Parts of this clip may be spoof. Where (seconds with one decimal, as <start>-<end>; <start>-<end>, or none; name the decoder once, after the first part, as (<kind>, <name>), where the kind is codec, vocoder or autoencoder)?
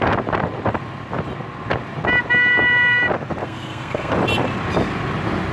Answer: 3.4-4.1 (codec, SNAC)